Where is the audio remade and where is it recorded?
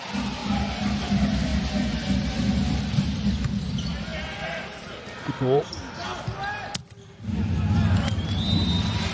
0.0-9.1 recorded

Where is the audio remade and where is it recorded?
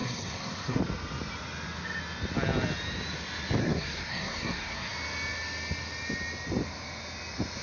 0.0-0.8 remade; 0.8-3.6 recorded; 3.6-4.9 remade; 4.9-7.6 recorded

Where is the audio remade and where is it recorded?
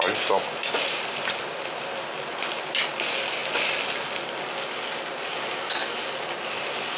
0.0-7.0 recorded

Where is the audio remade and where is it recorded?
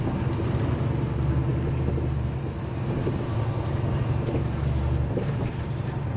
0.0-6.2 recorded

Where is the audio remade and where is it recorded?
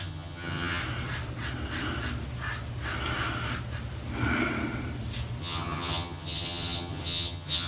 0.0-0.8 remade; 0.8-5.4 recorded; 5.4-7.7 remade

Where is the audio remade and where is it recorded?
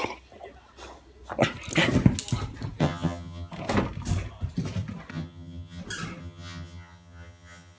0.0-2.8 recorded; 2.8-3.5 remade; 3.5-5.1 recorded; 5.1-5.8 remade; 5.8-6.2 recorded; 6.2-7.8 remade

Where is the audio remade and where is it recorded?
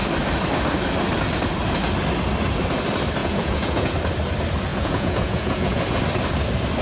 0.0-3.2 recorded; 3.2-3.9 remade; 3.9-4.7 recorded; 4.7-6.0 remade; 6.0-6.8 recorded